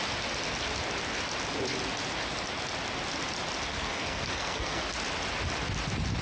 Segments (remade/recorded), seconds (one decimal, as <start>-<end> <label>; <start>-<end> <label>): 0.0-3.7 recorded; 3.7-4.9 remade; 4.9-6.2 recorded